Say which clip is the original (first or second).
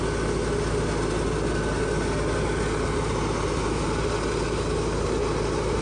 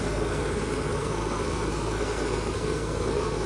first